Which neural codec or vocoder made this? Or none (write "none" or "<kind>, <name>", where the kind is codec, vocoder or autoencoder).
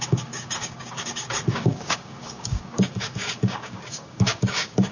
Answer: codec, DAC